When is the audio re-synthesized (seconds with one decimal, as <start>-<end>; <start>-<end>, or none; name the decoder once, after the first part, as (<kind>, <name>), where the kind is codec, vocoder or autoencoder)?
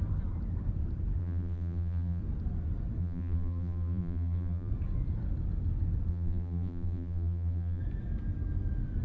1.2-2.2 (vocoder, BigVGAN v2); 3.0-4.7; 6.1-7.8